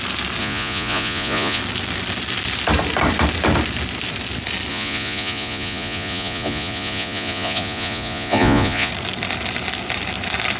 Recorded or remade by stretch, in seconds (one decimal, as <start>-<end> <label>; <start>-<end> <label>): 0.0-0.4 recorded; 0.4-1.6 remade; 1.6-4.7 recorded; 4.7-8.9 remade; 8.9-10.6 recorded